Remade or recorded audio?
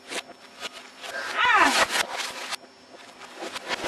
recorded